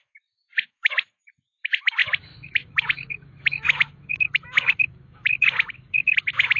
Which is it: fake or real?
fake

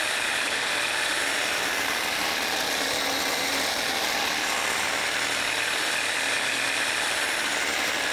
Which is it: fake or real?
real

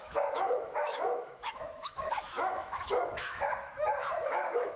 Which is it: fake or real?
fake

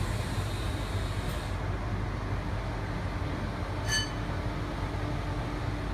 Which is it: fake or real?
real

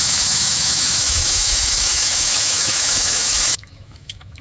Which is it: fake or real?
fake